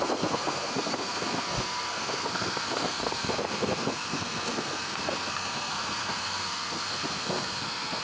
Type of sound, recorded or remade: remade